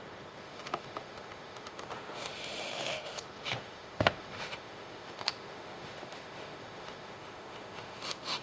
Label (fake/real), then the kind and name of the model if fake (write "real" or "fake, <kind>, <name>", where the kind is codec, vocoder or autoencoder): fake, autoencoder, DAC-VAE